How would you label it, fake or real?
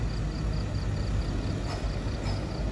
real